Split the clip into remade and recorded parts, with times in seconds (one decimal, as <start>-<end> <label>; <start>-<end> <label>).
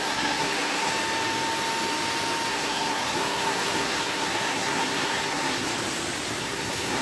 0.0-0.9 remade; 0.9-2.5 recorded; 2.5-5.7 remade; 5.7-6.4 recorded; 6.4-7.0 remade